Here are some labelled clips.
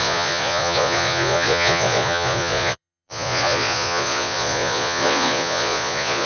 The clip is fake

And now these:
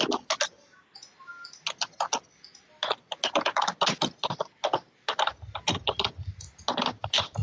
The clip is real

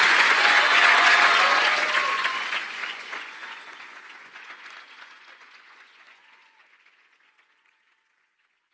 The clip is fake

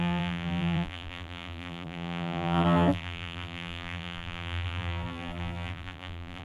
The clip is fake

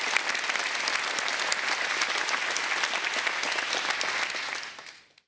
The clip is real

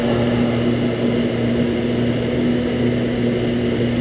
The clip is real